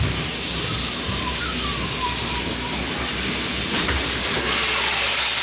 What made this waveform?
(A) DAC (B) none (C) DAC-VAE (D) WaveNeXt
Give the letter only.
B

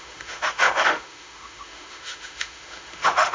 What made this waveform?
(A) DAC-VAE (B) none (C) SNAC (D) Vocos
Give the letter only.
A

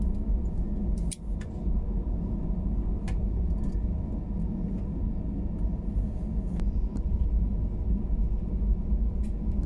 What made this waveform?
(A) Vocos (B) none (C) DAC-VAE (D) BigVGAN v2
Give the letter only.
B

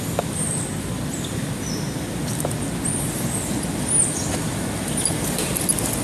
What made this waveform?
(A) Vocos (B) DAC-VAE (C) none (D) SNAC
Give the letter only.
C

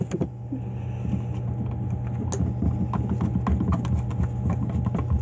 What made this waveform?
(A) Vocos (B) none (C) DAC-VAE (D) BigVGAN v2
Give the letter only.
B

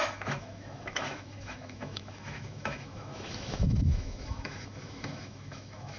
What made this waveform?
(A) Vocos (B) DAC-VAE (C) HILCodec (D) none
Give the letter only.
B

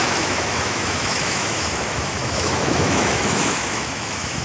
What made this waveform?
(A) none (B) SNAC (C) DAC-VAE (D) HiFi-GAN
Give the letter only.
C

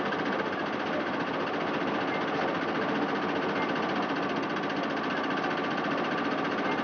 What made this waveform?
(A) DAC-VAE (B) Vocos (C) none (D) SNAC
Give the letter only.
C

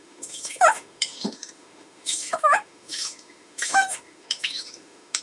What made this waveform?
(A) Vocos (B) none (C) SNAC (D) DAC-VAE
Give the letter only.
D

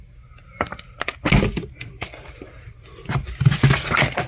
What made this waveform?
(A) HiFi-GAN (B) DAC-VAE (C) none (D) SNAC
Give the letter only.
C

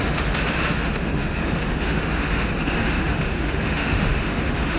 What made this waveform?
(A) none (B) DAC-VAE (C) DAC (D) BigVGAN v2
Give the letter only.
B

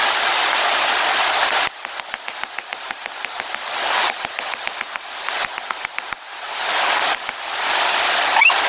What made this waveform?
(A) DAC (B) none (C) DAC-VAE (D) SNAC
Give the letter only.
B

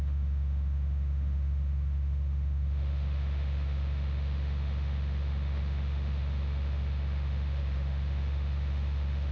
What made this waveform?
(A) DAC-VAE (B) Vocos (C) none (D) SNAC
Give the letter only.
A